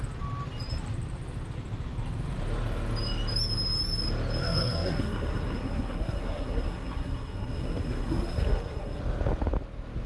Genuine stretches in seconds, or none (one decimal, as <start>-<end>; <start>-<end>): 0.0-4.4; 9.0-10.1